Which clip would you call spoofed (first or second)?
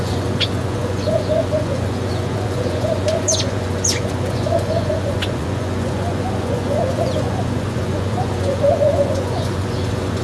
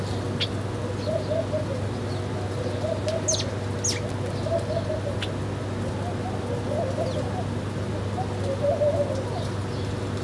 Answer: first